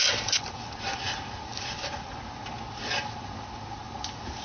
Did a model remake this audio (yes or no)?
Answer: no